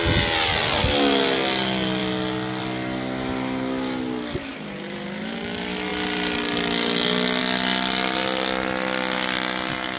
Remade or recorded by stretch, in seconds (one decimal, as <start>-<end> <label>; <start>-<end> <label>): 0.0-4.5 recorded; 4.5-5.4 remade; 5.4-10.0 recorded